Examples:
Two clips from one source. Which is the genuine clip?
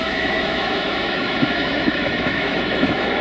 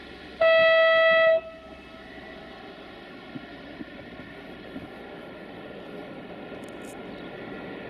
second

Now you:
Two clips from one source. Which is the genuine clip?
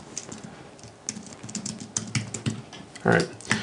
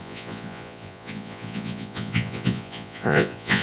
first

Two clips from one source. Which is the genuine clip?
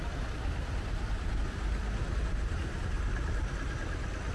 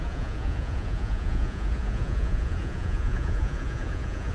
first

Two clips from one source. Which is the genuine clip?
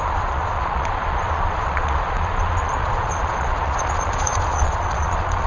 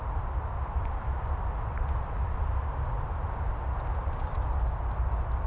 second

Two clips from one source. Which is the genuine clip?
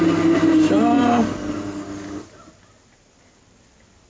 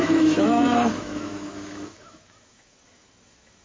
first